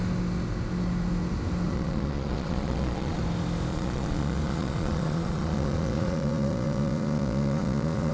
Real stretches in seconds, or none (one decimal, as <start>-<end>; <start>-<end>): 0.0-1.7; 3.2-3.7